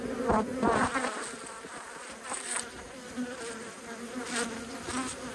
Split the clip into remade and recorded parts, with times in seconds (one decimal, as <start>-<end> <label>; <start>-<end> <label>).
0.0-5.3 recorded